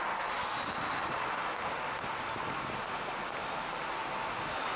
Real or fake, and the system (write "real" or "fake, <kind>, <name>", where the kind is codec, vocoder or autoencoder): real